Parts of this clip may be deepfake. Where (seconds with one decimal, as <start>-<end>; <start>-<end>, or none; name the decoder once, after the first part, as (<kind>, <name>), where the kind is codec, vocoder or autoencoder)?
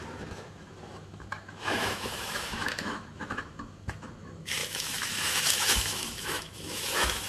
0.0-7.3 (autoencoder, DAC-VAE)